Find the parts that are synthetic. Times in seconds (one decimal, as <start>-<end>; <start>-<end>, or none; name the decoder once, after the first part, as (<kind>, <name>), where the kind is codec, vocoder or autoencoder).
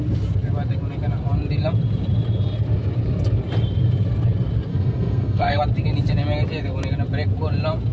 4.7-5.6 (codec, SNAC)